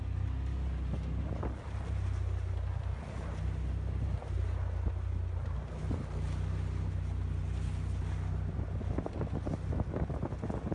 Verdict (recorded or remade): recorded